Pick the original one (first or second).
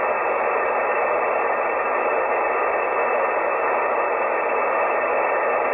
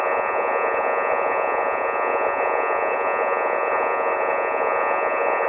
first